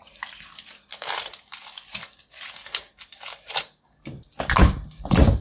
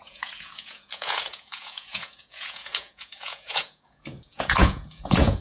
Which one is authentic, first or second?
first